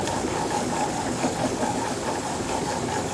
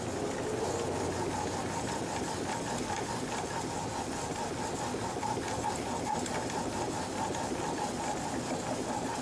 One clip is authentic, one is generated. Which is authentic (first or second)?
second